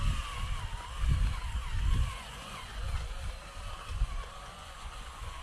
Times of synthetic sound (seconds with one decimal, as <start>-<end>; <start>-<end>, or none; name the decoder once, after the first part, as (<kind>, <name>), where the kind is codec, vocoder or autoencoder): 1.6-3.2 (vocoder, Vocos); 3.8-5.4